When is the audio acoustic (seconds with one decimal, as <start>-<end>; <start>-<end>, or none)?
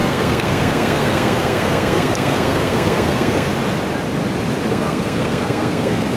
3.5-4.7